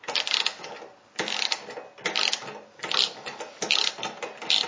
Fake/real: real